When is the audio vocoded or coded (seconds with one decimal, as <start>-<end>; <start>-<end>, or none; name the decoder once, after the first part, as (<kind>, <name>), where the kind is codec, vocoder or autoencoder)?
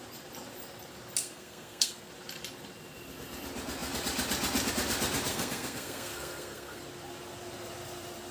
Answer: 1.2-2.1 (codec, SNAC); 5.3-6.8